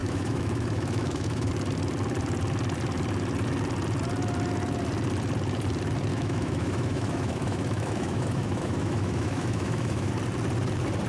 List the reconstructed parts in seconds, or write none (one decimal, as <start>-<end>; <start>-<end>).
0.0-1.5; 6.1-10.1